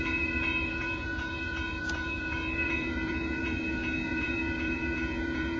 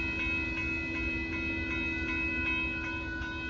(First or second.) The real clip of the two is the second